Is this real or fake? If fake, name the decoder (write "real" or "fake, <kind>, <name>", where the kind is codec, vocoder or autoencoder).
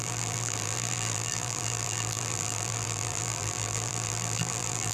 fake, vocoder, BigVGAN v2